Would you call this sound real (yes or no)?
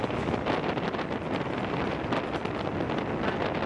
yes